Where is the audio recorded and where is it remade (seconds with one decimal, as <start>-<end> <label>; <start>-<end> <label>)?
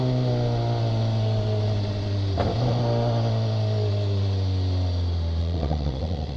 0.0-5.4 recorded; 5.4-6.4 remade